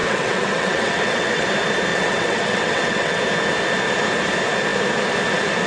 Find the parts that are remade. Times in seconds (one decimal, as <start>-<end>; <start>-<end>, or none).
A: 0.0-1.4; 1.9-3.2